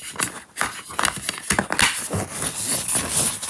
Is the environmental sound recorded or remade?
recorded